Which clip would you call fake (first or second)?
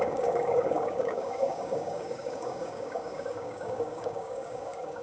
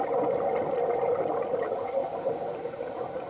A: first